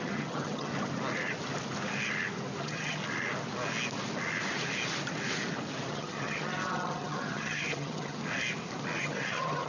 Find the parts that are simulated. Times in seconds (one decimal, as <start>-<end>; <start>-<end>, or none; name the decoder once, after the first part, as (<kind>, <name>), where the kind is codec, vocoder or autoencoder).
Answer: 0.0-0.7 (vocoder, HiFi-GAN); 2.6-3.0; 5.9-8.2; 9.0-9.7